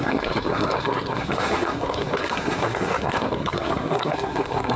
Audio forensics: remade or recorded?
remade